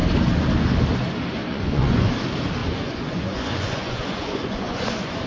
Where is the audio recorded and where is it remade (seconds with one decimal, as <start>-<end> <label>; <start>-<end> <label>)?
0.0-1.4 recorded; 1.4-2.1 remade; 2.1-2.6 recorded; 2.6-5.3 remade